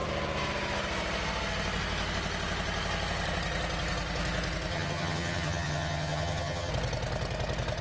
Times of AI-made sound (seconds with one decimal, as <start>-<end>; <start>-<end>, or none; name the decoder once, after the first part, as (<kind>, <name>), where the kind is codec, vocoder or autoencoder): 4.7-6.7 (vocoder, HiFi-GAN)